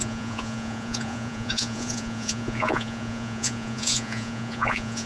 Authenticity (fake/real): fake